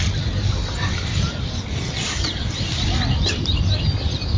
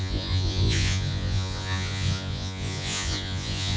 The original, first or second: first